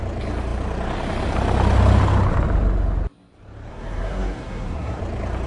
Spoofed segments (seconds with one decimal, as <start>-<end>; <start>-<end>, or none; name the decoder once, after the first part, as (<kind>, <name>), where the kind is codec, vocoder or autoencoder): 3.7-5.0 (codec, SNAC)